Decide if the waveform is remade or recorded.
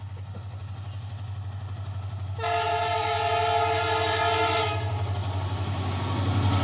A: recorded